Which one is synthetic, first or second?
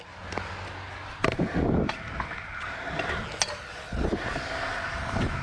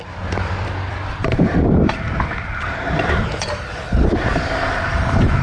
second